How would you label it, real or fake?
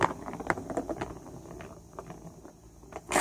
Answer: real